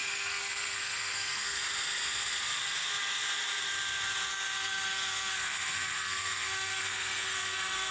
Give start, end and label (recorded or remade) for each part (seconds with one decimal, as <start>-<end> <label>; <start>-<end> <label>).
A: 0.0-1.6 remade; 1.6-4.3 recorded; 4.3-7.9 remade